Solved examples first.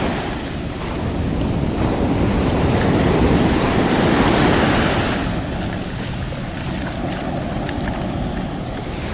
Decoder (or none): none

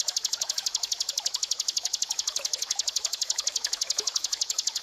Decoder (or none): autoencoder, DAC-VAE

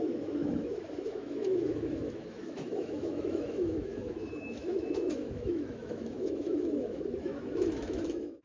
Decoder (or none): autoencoder, DAC-VAE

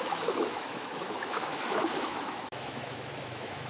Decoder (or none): autoencoder, DAC-VAE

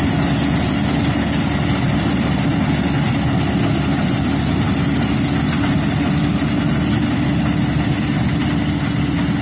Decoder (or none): none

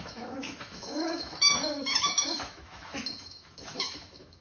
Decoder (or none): autoencoder, DAC-VAE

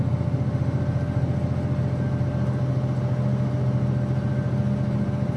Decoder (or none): none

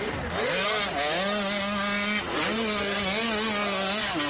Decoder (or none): none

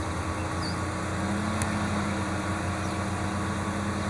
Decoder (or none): none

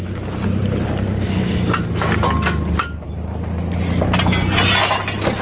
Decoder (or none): none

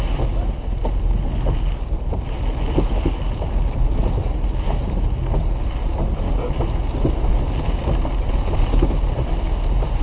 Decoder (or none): none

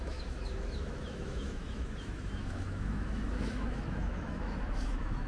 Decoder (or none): autoencoder, DAC-VAE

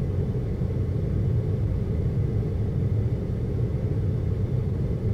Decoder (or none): none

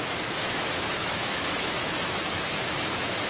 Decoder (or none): autoencoder, DAC-VAE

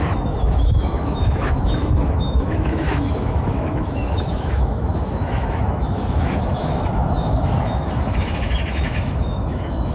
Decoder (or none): autoencoder, DAC-VAE